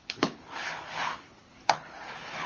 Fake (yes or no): yes